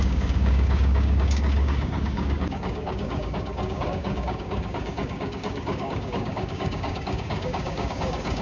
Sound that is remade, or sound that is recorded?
remade